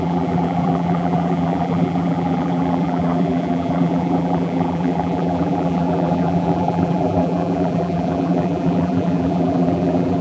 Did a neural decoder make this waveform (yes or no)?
yes